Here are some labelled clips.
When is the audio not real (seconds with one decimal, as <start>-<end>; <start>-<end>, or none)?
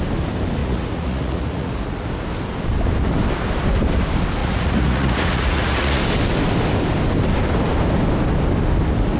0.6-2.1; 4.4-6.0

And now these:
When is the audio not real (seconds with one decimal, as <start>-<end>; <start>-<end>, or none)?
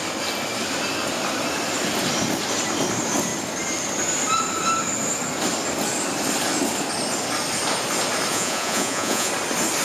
8.3-9.3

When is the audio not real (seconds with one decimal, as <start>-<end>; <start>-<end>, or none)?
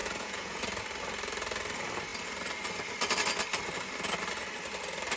0.0-0.6